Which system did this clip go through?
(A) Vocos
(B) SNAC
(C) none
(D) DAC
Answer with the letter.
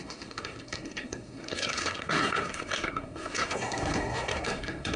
B